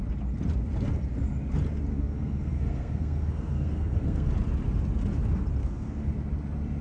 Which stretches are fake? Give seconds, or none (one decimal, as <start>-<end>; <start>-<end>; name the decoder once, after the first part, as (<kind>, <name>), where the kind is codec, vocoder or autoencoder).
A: 1.9-4.3 (codec, SNAC); 5.6-6.1